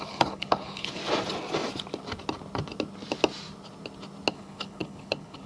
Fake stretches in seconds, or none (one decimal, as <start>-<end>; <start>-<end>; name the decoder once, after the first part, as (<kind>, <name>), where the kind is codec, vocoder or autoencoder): 0.0-1.0 (codec, HILCodec); 4.3-5.5